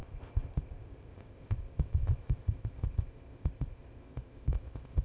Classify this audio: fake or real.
fake